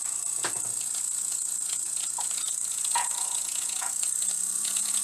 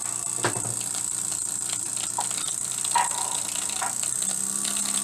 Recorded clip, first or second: second